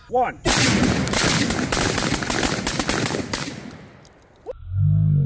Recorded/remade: recorded